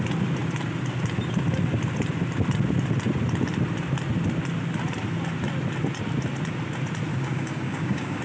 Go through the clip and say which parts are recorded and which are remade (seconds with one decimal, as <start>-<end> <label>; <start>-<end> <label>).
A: 0.0-7.1 recorded; 7.1-8.2 remade